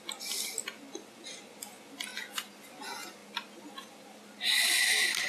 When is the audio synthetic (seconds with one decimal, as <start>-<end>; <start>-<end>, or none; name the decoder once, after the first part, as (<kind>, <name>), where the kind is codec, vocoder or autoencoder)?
none